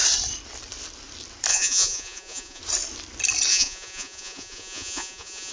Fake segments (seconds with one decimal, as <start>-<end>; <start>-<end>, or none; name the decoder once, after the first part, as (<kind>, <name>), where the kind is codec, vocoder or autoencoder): 1.5-2.6 (vocoder, Vocos); 3.5-5.5